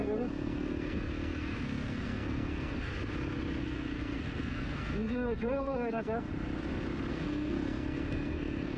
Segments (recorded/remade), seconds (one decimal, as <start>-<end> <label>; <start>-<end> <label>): 0.0-2.9 remade; 2.9-3.6 recorded; 3.6-6.3 remade; 6.3-7.1 recorded; 7.1-8.8 remade